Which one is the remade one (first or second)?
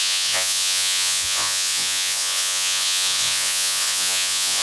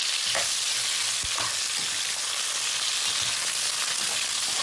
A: first